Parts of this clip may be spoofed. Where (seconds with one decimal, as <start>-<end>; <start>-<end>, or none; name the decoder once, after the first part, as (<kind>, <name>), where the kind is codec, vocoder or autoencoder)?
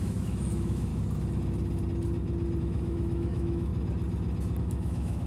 0.0-0.9 (autoencoder, DAC-VAE); 2.6-3.7; 4.6-5.3